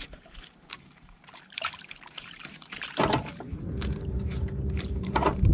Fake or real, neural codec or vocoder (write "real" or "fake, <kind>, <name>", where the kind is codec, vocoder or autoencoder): fake, vocoder, BigVGAN v2